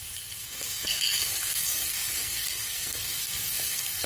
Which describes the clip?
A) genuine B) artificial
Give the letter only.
B